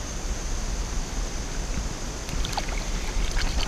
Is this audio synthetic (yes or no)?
no